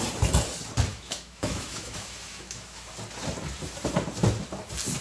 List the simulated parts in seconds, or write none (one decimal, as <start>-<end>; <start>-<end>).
0.9-2.9